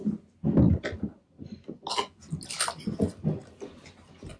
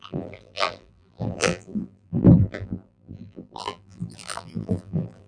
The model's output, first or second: second